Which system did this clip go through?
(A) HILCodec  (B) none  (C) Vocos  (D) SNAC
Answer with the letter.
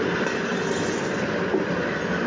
B